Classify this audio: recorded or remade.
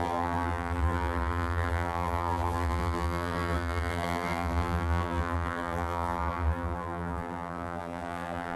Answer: remade